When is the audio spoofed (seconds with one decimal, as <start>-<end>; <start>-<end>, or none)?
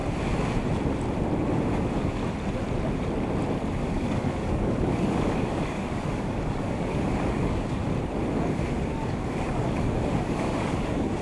1.8-2.2; 3.8-7.8; 8.4-11.2